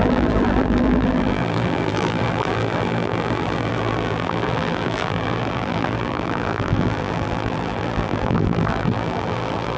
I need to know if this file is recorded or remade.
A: remade